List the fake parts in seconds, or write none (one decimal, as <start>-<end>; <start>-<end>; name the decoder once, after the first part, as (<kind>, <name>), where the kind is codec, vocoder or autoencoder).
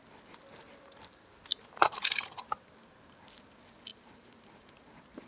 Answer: 1.5-2.7 (vocoder, BigVGAN v2); 3.9-4.8